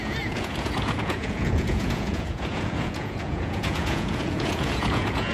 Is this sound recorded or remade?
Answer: remade